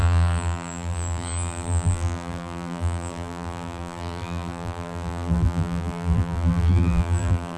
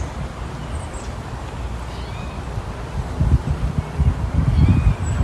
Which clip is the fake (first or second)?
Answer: first